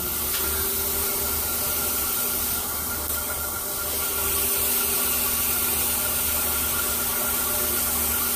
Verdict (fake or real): real